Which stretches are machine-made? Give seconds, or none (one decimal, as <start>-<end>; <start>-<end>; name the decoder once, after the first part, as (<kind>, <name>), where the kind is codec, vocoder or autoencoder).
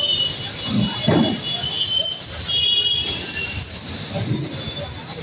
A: none